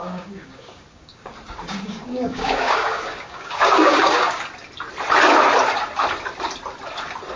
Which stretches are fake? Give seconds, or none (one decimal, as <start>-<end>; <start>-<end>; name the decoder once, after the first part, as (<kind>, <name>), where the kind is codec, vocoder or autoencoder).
0.0-4.4 (codec, DAC)